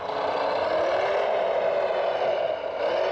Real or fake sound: real